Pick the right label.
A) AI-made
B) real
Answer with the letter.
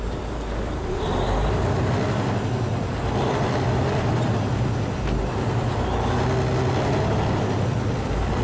B